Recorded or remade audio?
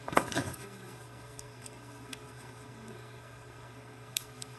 remade